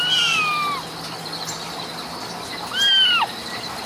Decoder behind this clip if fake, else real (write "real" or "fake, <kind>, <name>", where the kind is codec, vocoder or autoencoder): real